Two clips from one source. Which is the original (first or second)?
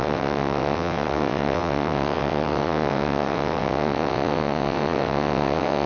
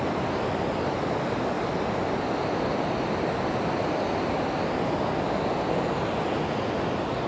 second